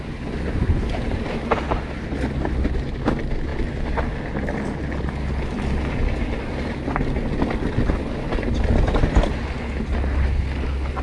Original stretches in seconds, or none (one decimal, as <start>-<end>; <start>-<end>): 0.0-11.0